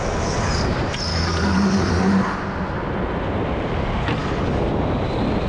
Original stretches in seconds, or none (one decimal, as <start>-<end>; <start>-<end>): 0.0-1.1; 1.9-4.2; 4.7-5.5